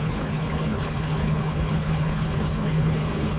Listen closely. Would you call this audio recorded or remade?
remade